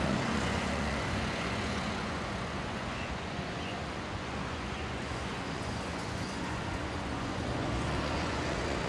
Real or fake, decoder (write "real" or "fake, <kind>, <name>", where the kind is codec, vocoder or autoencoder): fake, vocoder, Vocos